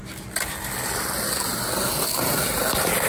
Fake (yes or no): no